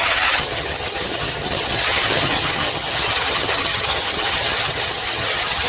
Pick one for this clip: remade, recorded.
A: remade